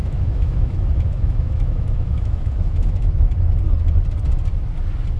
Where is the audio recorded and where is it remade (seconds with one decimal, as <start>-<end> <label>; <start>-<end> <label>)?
0.0-3.1 remade; 3.1-5.2 recorded